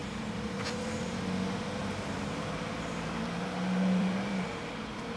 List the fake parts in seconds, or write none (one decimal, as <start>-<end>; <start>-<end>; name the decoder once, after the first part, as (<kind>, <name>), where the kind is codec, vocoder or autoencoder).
1.8-5.2 (vocoder, BigVGAN v2)